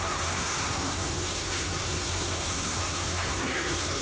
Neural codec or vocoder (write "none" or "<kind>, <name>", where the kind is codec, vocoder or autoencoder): codec, SNAC